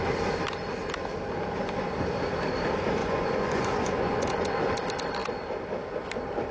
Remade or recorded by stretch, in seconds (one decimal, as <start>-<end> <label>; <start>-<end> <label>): 0.0-3.0 recorded; 3.0-4.3 remade; 4.3-6.5 recorded